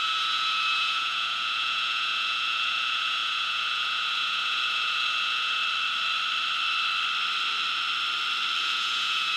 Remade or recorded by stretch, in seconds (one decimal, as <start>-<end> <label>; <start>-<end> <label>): 0.0-5.6 remade; 5.6-8.6 recorded; 8.6-9.4 remade